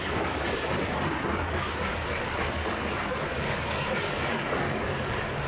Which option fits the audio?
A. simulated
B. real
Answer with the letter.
A